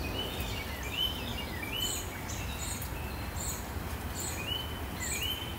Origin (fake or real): real